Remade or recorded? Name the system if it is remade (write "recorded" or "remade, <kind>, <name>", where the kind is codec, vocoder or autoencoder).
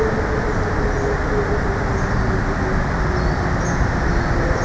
recorded